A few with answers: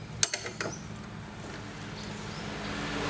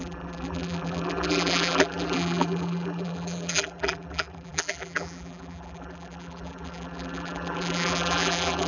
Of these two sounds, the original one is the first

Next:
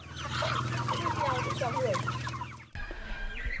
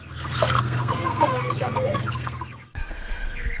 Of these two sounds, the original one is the first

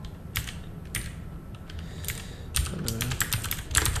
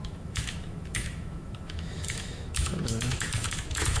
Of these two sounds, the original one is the first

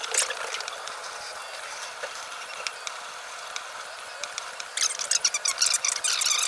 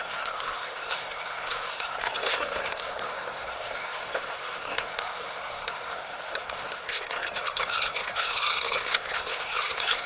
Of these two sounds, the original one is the first